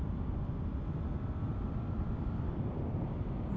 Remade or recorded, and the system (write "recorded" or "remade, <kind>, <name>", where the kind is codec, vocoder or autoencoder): recorded